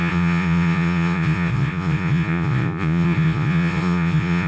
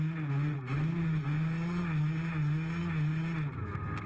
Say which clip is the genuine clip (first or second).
second